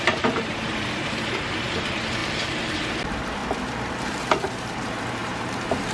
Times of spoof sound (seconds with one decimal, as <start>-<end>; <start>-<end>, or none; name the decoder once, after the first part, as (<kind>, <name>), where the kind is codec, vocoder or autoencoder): 0.0-3.4 (vocoder, BigVGAN v2); 4.5-5.9